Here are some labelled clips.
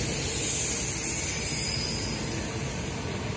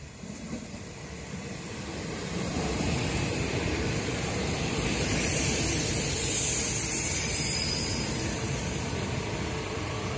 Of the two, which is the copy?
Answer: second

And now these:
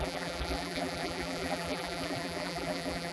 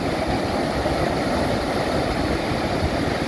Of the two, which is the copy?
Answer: first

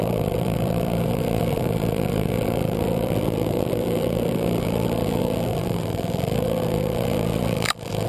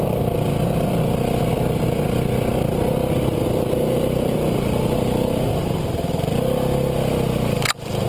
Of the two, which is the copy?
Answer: first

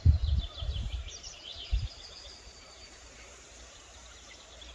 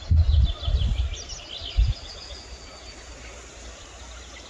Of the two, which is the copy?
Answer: first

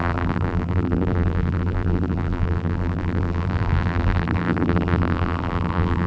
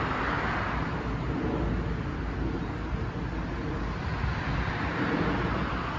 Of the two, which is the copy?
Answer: first